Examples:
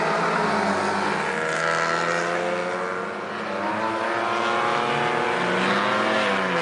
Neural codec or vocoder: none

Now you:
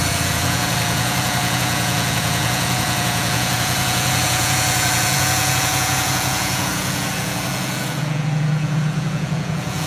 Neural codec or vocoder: vocoder, Vocos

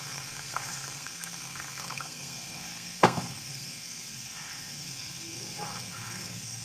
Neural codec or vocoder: codec, SNAC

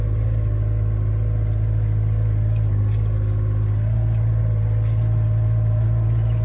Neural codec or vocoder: vocoder, BigVGAN v2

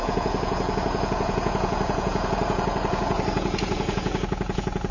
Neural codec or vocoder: vocoder, Vocos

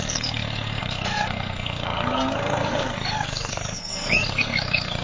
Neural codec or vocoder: codec, SNAC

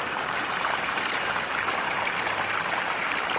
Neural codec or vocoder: none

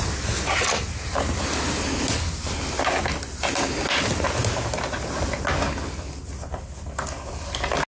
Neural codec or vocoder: none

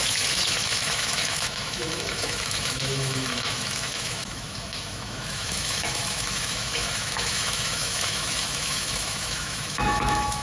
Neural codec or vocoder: autoencoder, DAC-VAE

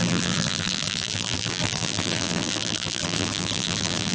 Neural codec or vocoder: vocoder, BigVGAN v2